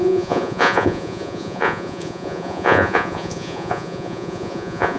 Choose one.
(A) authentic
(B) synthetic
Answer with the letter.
B